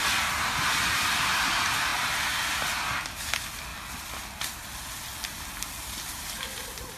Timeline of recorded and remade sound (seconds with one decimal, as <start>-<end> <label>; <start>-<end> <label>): 0.0-7.0 recorded